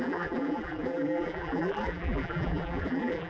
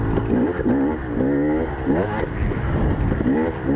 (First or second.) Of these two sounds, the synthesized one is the first